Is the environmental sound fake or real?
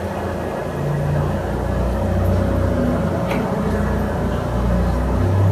real